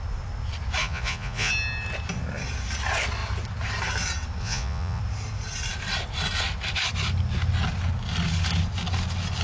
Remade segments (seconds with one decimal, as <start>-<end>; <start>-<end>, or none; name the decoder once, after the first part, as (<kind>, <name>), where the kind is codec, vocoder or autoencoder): 0.8-1.5 (vocoder, Vocos); 4.4-5.0